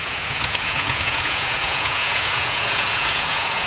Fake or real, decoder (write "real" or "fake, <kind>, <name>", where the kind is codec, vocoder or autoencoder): fake, vocoder, Vocos